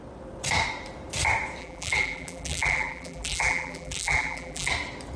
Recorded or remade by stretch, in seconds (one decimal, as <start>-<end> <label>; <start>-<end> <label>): 0.0-1.6 recorded; 1.6-4.7 remade; 4.7-5.2 recorded